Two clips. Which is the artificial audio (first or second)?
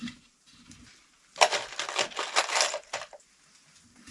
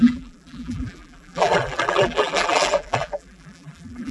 second